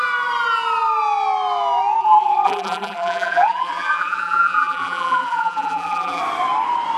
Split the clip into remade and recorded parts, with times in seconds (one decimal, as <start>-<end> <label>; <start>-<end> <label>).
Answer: 0.0-2.0 recorded; 2.0-6.2 remade; 6.2-7.0 recorded